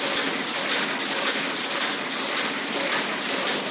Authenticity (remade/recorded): recorded